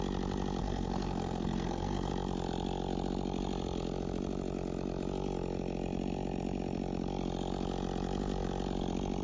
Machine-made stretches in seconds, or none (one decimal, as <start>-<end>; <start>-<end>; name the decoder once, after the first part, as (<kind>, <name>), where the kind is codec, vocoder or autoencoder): 0.6-2.1 (codec, SNAC)